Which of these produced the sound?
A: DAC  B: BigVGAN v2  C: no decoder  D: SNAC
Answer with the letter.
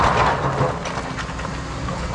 C